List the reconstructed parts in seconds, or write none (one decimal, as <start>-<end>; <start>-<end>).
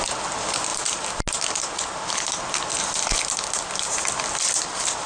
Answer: none